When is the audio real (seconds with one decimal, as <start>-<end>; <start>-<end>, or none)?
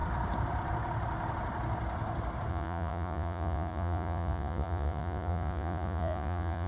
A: 0.0-2.5